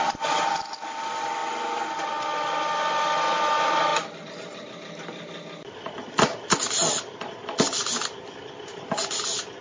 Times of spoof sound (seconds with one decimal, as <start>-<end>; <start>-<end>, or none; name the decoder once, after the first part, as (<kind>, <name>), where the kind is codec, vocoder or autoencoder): none